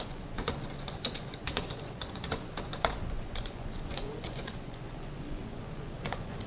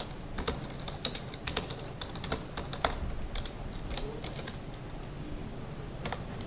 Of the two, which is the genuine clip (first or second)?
second